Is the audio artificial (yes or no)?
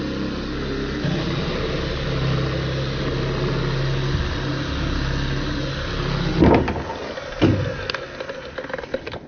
no